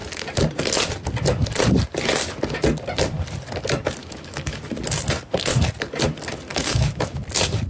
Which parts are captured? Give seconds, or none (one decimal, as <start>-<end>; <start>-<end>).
0.0-4.0; 4.6-6.5; 7.2-7.7